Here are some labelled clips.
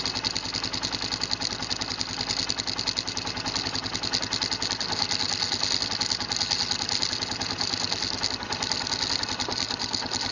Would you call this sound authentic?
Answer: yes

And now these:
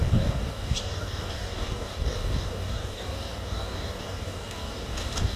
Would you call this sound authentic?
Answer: no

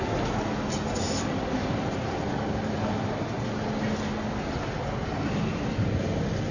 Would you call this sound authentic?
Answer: yes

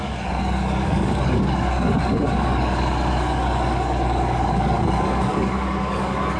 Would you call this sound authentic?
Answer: no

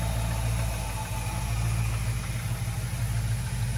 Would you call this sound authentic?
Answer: yes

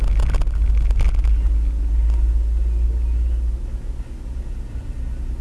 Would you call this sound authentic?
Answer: yes